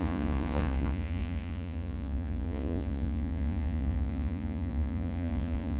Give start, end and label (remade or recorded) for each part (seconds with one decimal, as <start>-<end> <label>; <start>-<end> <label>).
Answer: 0.0-5.8 remade